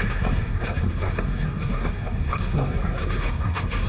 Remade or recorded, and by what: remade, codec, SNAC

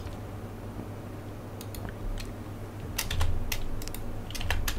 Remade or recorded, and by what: recorded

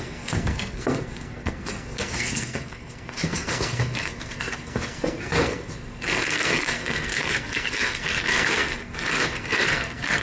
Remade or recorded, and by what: remade, codec, SNAC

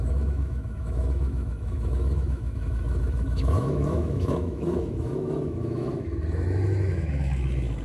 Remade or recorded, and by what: remade, autoencoder, DAC-VAE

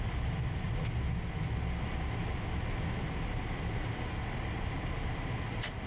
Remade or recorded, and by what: recorded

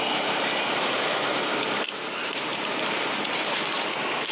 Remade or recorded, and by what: recorded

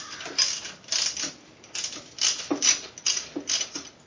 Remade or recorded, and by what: recorded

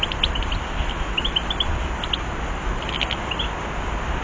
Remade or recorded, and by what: recorded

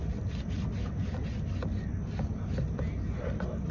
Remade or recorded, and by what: recorded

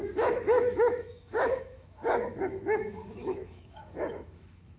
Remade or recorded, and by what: remade, autoencoder, DAC-VAE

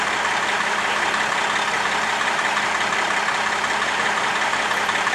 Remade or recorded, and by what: recorded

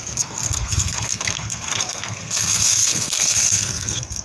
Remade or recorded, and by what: remade, codec, SNAC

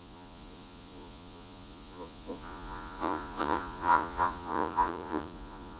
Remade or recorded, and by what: remade, vocoder, Vocos